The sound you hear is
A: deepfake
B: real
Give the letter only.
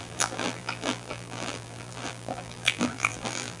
A